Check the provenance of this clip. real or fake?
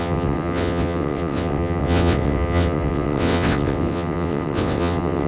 fake